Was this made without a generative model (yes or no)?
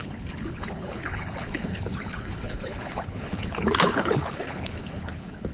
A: no